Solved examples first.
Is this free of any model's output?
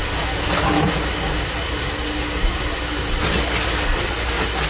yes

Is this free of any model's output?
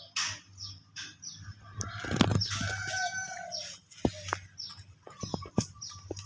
yes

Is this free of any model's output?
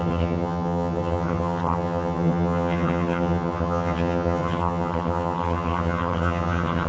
no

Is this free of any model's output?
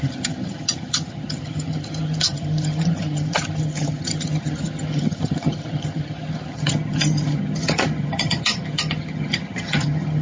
no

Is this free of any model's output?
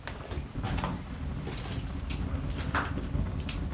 yes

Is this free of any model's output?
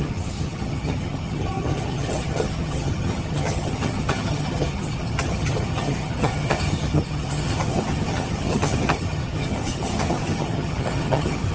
no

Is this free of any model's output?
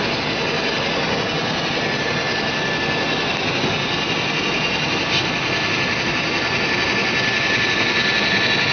yes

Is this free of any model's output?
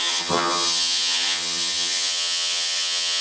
no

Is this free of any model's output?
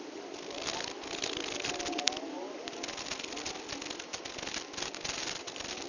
yes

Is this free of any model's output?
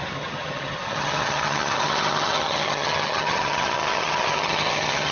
no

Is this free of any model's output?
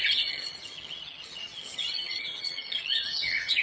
no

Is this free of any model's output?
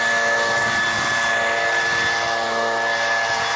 yes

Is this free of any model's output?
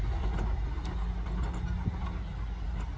yes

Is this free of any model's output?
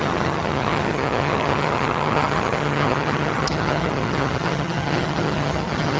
no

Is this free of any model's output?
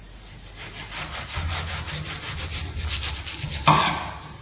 yes